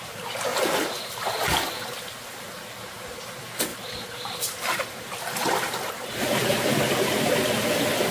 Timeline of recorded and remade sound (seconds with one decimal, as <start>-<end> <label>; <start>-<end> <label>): 0.0-3.7 recorded; 3.7-5.9 remade; 5.9-6.4 recorded; 6.4-7.1 remade; 7.1-8.1 recorded